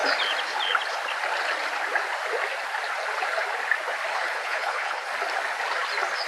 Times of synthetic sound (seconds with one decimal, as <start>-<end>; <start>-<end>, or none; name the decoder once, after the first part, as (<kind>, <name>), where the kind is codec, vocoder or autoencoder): 4.1-5.1 (codec, HILCodec)